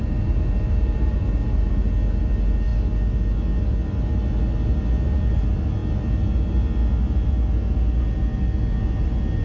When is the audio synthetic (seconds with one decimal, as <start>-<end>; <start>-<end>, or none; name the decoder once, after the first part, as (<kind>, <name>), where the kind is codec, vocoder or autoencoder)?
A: 0.0-1.9 (vocoder, BigVGAN v2)